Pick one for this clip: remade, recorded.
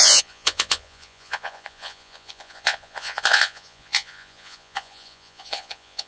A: remade